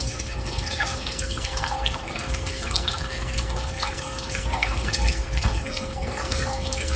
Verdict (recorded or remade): remade